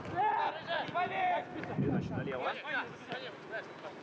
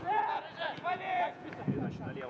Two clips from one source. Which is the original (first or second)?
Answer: first